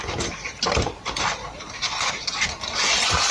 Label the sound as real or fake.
fake